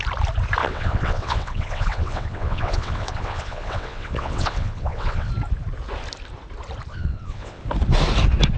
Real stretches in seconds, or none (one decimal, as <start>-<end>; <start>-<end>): 0.0-0.6; 5.3-6.9; 7.6-8.6